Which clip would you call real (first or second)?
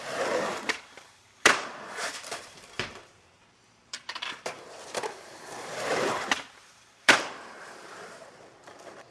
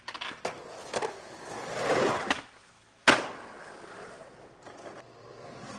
second